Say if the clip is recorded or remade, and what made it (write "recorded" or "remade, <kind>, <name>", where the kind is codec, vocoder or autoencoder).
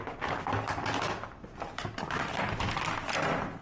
recorded